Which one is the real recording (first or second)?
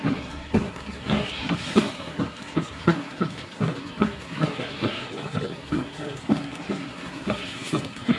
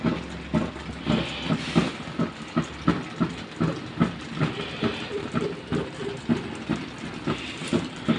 second